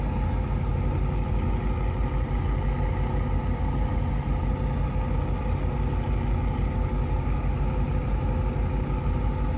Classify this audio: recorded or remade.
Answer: recorded